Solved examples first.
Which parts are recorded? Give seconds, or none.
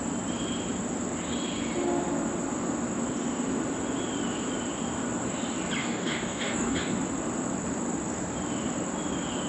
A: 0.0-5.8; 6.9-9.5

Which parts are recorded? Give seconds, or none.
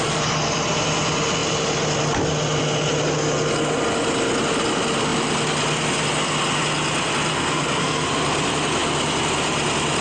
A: 0.0-7.3; 8.1-10.0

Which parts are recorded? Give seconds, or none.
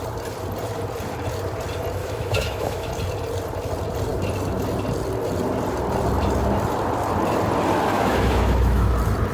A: 0.0-2.0; 2.9-7.9; 8.9-9.3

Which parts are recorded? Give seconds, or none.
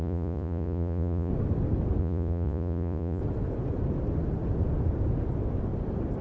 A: 1.3-2.0; 3.2-6.2